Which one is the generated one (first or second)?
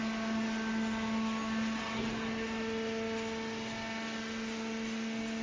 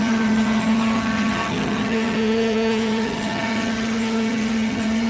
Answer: second